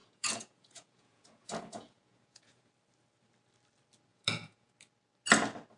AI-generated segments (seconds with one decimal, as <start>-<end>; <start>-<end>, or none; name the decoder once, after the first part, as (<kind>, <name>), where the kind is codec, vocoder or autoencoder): 0.0-2.7 (vocoder, Vocos); 4.1-4.7